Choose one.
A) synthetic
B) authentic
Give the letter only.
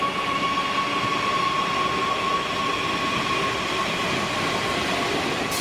B